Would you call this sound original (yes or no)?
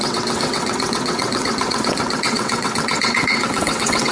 no